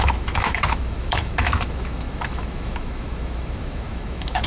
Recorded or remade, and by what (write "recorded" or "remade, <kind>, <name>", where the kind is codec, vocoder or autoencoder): remade, autoencoder, DAC-VAE